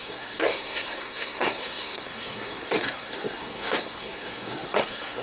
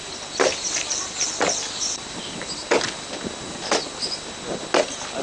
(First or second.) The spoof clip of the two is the first